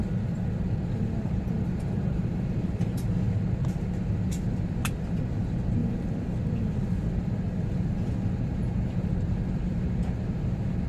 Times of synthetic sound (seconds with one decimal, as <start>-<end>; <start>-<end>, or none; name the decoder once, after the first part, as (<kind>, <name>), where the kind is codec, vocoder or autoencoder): 0.0-3.1 (vocoder, BigVGAN v2); 5.8-6.8